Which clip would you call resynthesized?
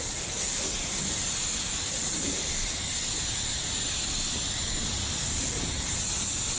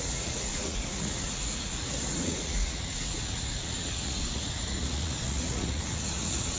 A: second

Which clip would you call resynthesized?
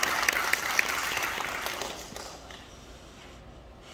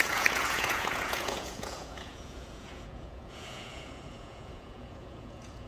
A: second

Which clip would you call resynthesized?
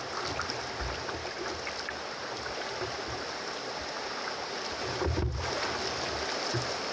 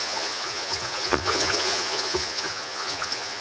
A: second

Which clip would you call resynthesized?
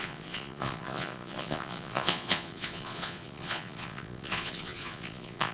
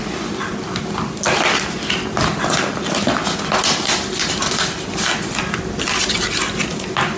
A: first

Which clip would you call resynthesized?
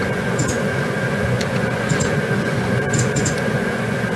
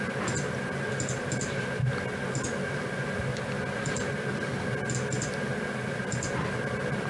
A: first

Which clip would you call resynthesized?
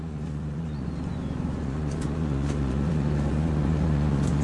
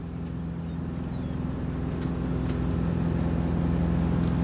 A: first